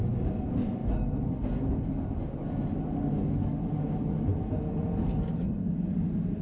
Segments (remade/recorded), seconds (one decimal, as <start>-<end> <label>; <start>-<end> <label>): 0.0-0.8 remade; 0.8-3.5 recorded; 3.5-6.4 remade